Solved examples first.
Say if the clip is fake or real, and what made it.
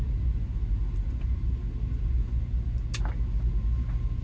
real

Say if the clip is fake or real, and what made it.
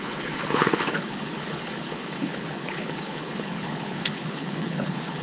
fake, codec, HILCodec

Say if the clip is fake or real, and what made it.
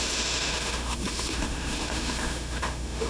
fake, autoencoder, DAC-VAE